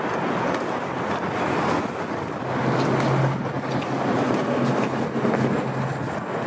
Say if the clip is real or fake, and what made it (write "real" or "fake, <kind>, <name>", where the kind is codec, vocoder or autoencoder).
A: real